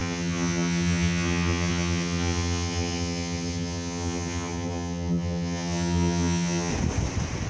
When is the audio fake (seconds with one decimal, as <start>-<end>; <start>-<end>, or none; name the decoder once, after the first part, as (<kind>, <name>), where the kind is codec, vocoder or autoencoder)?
0.0-6.7 (vocoder, HiFi-GAN)